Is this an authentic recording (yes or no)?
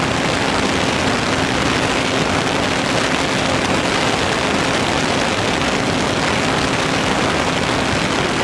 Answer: yes